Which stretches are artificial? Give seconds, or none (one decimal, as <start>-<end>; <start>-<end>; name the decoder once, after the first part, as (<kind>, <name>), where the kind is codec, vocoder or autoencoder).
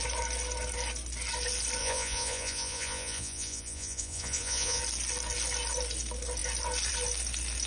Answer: 1.8-4.8 (vocoder, Vocos)